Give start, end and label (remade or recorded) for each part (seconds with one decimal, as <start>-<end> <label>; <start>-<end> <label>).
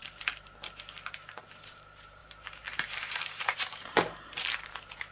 0.0-1.4 recorded; 1.4-5.1 remade